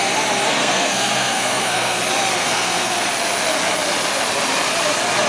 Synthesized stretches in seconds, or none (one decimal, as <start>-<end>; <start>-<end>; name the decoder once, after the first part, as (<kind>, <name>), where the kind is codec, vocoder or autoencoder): 0.6-2.0 (codec, SNAC); 2.4-3.0